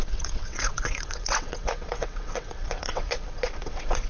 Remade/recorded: remade